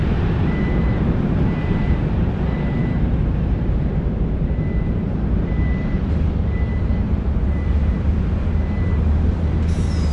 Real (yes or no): no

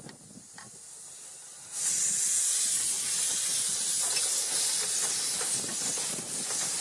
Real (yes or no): yes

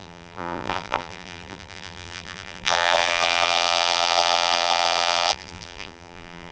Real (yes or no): no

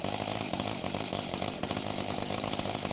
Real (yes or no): no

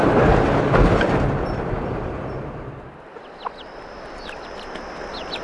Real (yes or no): no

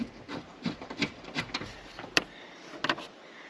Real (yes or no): no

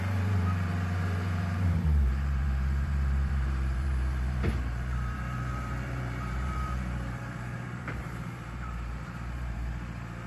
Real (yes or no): no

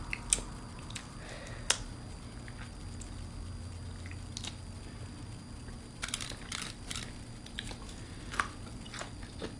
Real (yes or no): yes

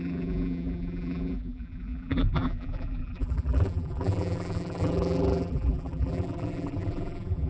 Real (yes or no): no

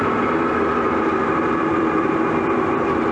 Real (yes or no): no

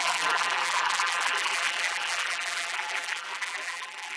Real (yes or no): no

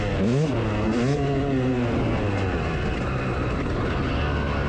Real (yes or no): yes